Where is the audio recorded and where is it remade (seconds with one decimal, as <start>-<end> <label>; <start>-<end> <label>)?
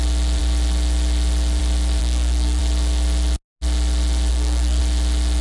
0.0-2.0 recorded; 2.0-2.6 remade; 2.6-4.3 recorded; 4.3-4.8 remade; 4.8-5.4 recorded